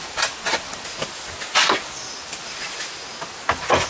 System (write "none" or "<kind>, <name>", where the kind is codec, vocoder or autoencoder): none